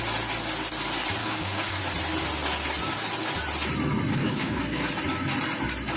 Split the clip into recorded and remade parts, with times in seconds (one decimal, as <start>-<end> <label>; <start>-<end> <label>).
0.0-1.2 recorded; 1.2-1.8 remade; 1.8-4.2 recorded; 4.2-4.9 remade; 4.9-6.0 recorded